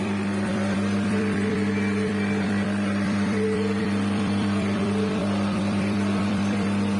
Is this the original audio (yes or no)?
no